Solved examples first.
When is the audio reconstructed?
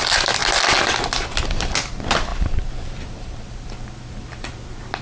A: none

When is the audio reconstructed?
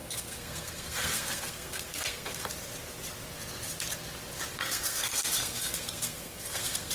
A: 0.0-2.5; 4.5-6.9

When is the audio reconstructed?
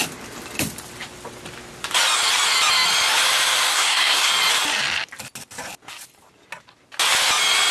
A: 3.7-4.3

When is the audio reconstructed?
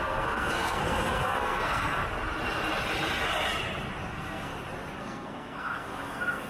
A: 0.0-2.0; 4.1-4.5; 5.0-6.5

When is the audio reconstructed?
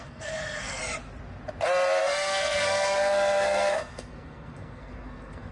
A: 0.0-0.8; 2.0-5.5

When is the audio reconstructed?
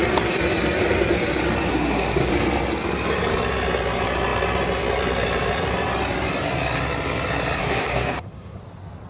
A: 1.7-2.3; 7.6-8.6